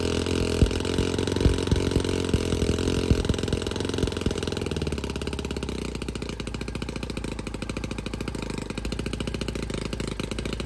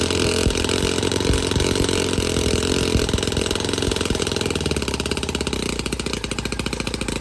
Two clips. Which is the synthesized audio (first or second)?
second